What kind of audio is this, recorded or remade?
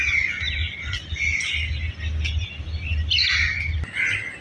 recorded